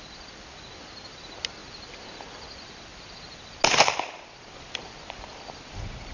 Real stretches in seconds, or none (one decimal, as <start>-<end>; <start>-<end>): 0.0-6.1